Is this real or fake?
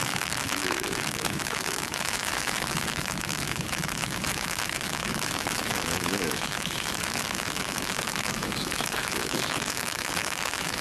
fake